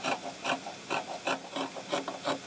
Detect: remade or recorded recorded